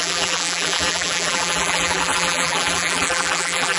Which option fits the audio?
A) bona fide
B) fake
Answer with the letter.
B